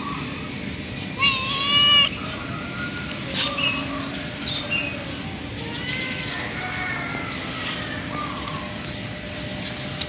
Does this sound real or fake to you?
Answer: real